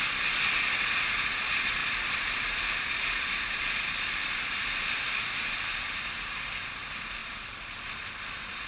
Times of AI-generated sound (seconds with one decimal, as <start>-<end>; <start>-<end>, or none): 1.8-6.0; 7.2-8.2